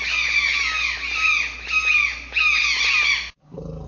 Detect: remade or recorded recorded